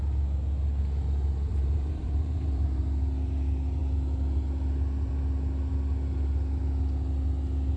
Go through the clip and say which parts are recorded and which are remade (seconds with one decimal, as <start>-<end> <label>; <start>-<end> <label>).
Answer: 0.0-1.5 recorded; 1.5-2.8 remade; 2.8-7.8 recorded